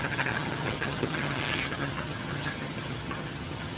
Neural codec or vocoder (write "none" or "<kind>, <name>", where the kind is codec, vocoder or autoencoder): vocoder, HiFi-GAN